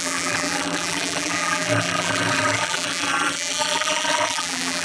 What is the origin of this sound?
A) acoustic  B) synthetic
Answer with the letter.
B